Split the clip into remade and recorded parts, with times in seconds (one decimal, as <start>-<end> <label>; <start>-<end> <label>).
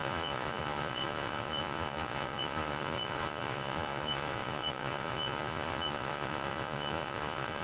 0.0-7.6 remade